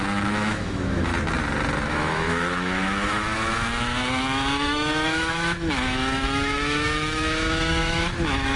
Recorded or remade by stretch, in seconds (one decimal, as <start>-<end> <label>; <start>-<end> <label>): 0.0-1.1 remade; 1.1-1.8 recorded; 1.8-8.6 remade

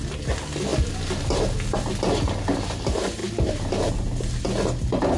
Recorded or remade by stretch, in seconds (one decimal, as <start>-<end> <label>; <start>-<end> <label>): 0.0-5.2 recorded

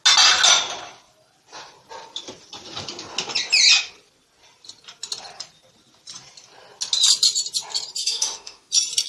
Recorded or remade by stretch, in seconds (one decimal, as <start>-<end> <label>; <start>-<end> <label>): 0.0-8.0 recorded; 8.0-8.7 remade; 8.7-9.1 recorded